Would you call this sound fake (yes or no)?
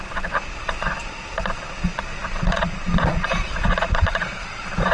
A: yes